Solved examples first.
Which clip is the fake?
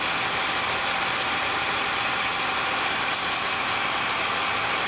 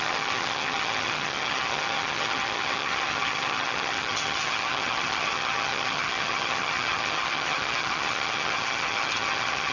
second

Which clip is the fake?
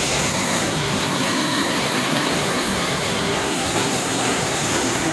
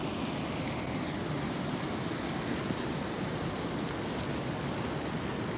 first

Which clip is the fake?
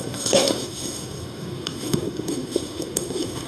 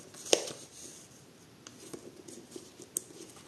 first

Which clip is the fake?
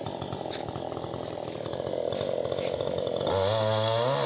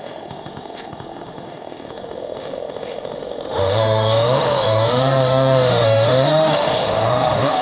second